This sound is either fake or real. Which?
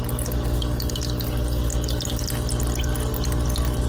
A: real